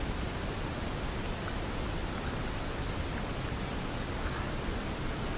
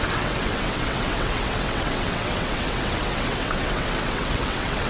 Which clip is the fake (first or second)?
second